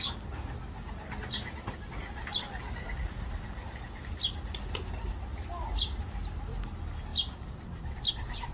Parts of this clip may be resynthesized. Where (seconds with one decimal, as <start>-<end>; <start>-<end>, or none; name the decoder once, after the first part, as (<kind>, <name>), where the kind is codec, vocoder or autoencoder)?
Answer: none